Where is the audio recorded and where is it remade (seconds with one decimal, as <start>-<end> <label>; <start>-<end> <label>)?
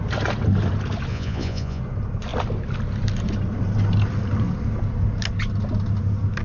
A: 0.0-1.1 recorded; 1.1-1.8 remade; 1.8-6.4 recorded